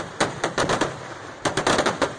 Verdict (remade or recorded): recorded